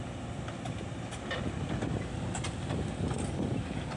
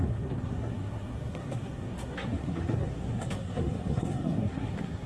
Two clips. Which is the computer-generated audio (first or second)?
second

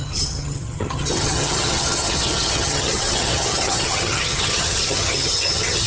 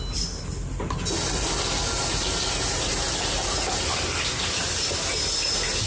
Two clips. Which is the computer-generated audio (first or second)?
first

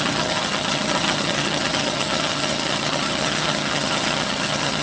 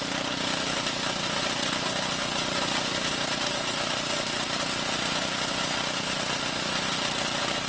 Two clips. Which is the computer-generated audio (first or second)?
first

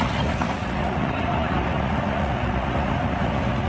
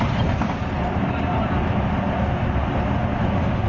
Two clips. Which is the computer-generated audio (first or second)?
first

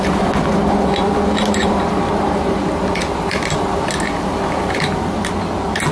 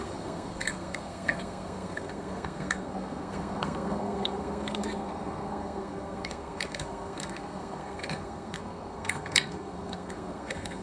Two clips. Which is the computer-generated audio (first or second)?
second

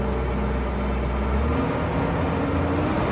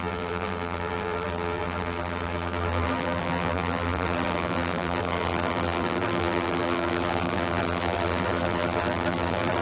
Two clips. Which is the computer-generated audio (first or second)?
second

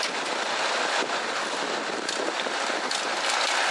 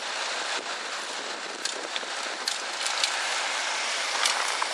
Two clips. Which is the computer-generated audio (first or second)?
second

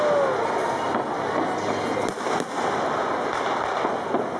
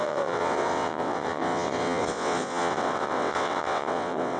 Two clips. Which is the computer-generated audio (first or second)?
second